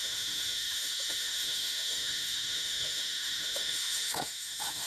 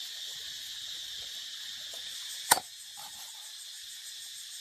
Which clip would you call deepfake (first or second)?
first